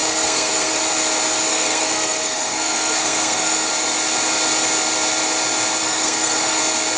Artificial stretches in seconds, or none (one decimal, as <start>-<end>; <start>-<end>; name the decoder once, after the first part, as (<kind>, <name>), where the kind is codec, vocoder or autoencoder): 0.0-0.8 (codec, SNAC); 1.5-3.7; 5.8-6.6